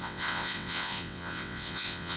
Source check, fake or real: fake